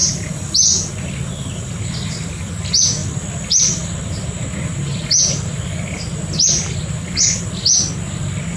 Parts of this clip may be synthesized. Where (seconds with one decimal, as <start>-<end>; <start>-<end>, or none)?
none